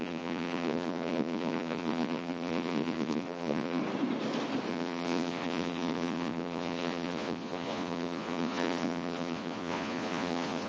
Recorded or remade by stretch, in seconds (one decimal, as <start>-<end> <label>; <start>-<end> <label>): 0.0-3.8 remade; 3.8-4.7 recorded; 4.7-10.7 remade